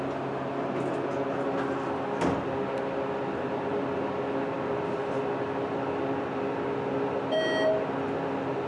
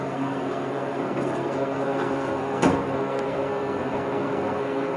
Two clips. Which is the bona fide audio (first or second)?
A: first